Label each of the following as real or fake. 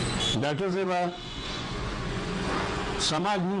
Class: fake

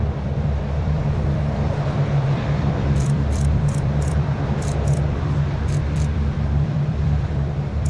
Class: fake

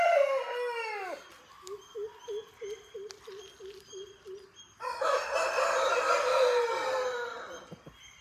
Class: real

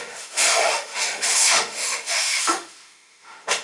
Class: fake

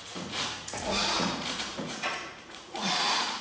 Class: fake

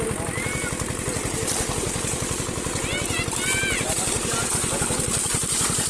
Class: real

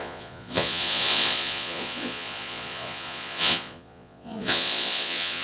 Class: fake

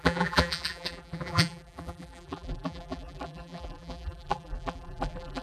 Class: fake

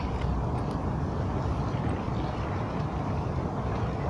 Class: real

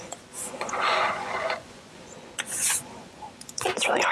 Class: fake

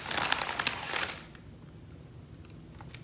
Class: real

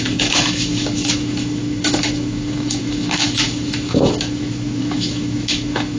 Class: fake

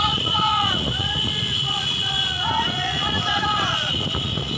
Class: fake